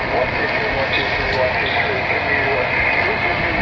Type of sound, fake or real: real